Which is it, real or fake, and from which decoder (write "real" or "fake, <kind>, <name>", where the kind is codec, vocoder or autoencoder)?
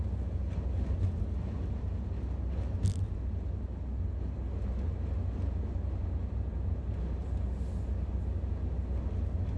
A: real